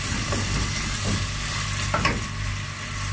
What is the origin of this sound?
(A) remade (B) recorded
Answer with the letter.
B